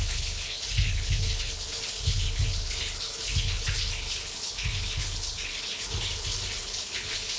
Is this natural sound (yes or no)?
no